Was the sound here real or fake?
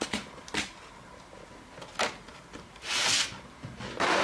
real